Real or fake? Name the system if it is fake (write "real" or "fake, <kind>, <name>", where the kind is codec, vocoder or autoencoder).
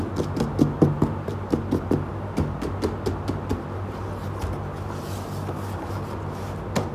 real